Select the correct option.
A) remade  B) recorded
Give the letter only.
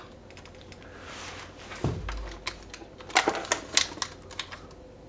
B